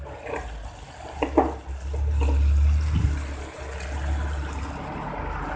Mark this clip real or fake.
real